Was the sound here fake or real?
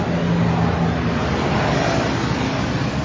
real